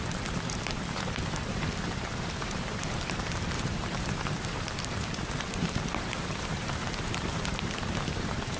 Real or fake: fake